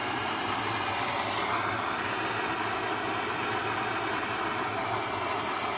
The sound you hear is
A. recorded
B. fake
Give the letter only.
A